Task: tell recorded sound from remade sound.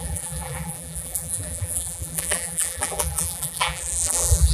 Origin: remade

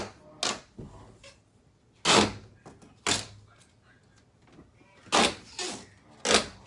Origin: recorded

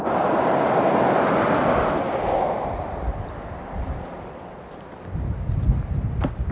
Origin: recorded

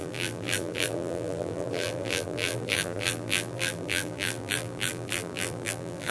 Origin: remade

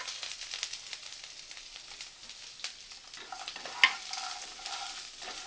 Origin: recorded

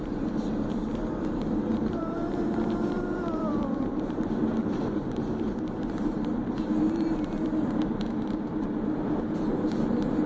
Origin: remade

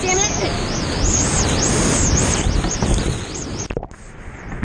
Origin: recorded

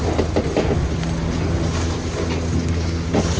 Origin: recorded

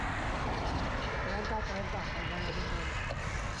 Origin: recorded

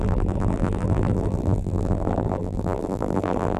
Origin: remade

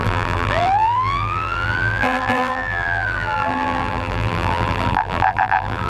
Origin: remade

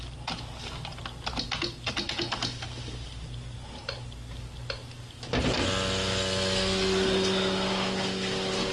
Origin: recorded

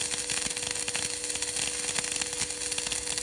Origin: recorded